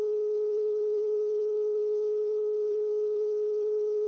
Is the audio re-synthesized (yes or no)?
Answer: yes